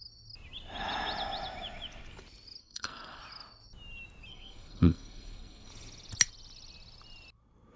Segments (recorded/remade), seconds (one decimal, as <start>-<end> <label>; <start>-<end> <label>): 0.0-2.6 recorded; 2.6-3.2 remade; 3.2-4.3 recorded; 4.3-5.7 remade; 5.7-7.8 recorded